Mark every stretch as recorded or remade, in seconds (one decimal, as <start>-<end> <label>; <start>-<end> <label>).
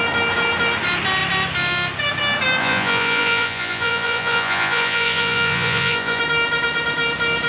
0.0-2.6 recorded; 2.6-6.2 remade; 6.2-7.5 recorded